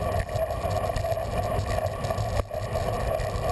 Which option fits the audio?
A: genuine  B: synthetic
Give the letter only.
A